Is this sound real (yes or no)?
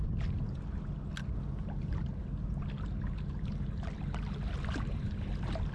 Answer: yes